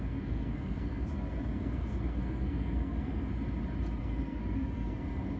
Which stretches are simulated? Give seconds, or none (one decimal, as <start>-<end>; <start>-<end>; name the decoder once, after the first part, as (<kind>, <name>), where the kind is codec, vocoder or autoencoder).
0.0-3.3 (codec, SNAC); 4.0-5.4